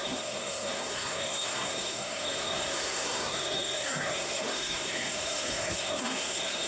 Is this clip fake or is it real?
fake